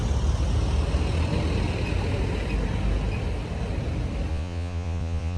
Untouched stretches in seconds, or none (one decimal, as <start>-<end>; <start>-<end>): 0.0-4.3